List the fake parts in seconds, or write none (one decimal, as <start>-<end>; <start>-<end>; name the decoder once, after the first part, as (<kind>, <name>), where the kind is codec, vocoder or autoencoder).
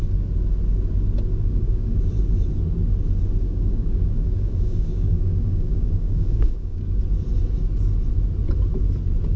1.3-2.0 (codec, DAC); 3.4-7.0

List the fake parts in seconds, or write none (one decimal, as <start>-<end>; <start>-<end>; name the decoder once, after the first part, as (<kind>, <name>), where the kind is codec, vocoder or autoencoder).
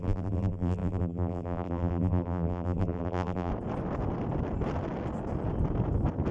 0.0-3.5 (vocoder, BigVGAN v2)